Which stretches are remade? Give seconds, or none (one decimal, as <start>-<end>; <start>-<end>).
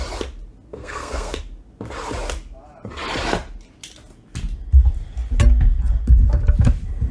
0.7-1.4